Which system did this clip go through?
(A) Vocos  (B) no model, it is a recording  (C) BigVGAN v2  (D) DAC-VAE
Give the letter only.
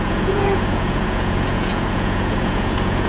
A